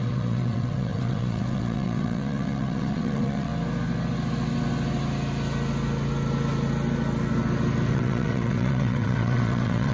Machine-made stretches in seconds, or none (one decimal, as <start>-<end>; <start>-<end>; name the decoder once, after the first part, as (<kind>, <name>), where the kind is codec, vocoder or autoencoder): 0.0-3.5 (vocoder, WaveNeXt); 7.9-9.9